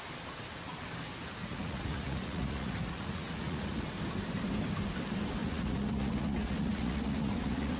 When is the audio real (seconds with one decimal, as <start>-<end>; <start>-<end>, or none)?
0.0-1.4; 3.8-5.4